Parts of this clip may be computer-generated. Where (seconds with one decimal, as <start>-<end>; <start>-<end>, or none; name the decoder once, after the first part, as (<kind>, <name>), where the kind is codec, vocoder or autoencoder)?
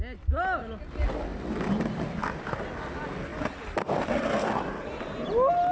3.3-4.1 (vocoder, BigVGAN v2)